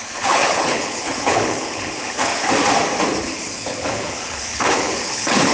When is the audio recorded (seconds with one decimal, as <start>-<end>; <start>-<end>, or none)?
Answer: 2.3-3.2